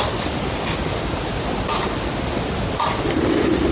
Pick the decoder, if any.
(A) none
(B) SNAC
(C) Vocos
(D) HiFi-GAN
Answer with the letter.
A